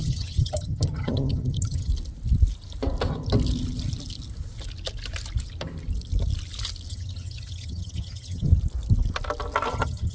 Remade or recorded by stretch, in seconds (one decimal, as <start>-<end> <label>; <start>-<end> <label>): 0.0-1.9 remade; 1.9-6.9 recorded; 6.9-8.5 remade; 8.5-9.7 recorded; 9.7-10.1 remade